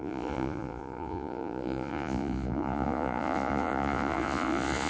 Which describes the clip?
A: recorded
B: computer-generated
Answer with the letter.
B